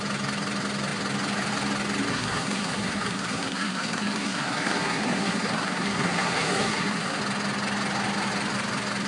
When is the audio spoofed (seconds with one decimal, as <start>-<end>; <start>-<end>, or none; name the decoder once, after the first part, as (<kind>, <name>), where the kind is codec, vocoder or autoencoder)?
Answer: 2.1-7.2 (codec, SNAC)